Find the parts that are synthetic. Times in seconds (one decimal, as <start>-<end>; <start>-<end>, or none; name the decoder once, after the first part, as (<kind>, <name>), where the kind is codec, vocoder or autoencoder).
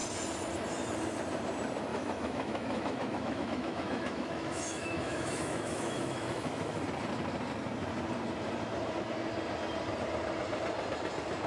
1.9-6.8 (autoencoder, DAC-VAE)